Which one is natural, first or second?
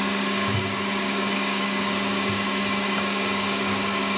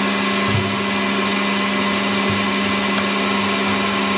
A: second